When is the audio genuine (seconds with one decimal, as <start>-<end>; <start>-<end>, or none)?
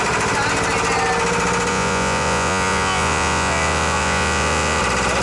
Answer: 0.0-1.7; 4.8-5.2